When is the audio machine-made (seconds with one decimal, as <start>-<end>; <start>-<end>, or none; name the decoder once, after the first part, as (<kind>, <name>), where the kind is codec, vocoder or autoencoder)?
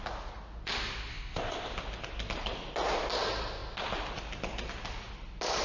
1.1-1.7 (codec, ZipCodec)